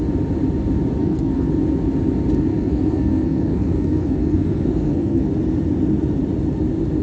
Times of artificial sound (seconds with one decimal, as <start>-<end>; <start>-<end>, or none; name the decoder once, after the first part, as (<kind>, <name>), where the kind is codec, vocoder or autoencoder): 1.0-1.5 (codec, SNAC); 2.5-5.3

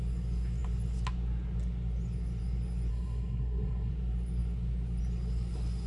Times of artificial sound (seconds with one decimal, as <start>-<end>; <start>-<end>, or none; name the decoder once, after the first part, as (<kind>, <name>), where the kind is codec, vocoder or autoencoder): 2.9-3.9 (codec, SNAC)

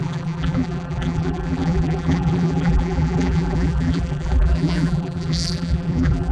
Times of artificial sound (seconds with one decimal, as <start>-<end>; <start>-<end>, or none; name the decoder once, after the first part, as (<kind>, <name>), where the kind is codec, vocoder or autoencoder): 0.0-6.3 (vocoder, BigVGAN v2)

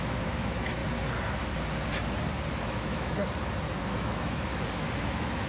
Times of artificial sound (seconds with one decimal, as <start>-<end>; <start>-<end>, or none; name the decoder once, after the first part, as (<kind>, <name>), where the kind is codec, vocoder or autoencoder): 0.0-0.8 (autoencoder, DAC-VAE); 2.5-3.2; 3.8-4.5; 5.0-5.5

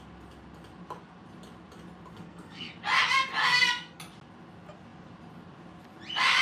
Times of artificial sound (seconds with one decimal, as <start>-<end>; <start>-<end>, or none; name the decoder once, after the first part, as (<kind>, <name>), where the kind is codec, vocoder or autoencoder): 2.1-2.7 (codec, SNAC); 3.4-4.0

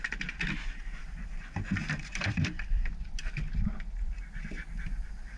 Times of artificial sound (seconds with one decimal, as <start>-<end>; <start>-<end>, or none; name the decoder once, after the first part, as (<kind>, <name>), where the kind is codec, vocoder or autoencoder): 2.1-2.9 (vocoder, BigVGAN v2)